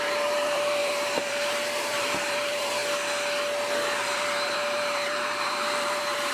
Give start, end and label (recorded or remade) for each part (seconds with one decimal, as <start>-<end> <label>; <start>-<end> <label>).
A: 0.0-2.8 remade; 2.8-4.0 recorded; 4.0-6.3 remade